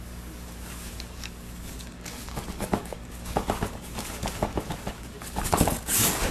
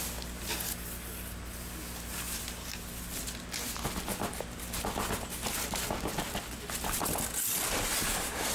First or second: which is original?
second